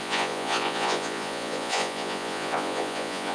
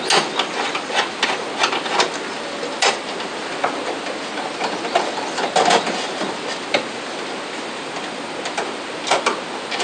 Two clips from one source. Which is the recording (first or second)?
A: second